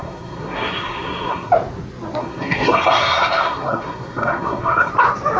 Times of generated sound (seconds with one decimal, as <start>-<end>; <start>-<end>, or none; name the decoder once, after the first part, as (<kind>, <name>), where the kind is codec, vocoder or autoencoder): 0.0-1.5 (codec, SNAC); 2.2-4.9